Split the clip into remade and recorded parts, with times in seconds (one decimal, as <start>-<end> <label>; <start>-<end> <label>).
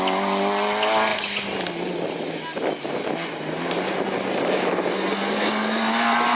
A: 0.0-6.4 recorded